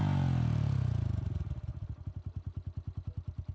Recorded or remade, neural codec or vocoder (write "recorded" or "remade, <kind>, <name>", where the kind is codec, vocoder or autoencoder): recorded